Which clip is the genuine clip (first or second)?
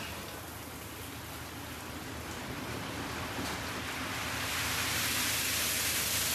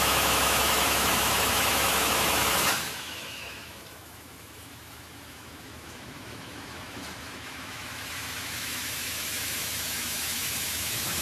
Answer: first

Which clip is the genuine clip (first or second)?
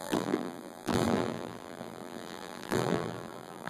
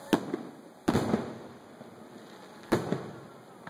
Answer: second